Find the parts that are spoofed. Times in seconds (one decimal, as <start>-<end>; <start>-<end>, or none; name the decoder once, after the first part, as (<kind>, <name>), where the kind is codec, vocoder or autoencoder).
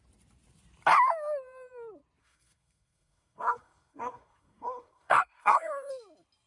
2.2-5.9 (codec, SNAC)